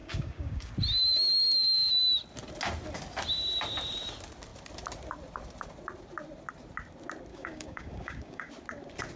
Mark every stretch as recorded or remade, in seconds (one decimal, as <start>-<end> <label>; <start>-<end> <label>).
0.0-0.7 remade; 0.7-7.3 recorded; 7.3-8.5 remade; 8.5-9.2 recorded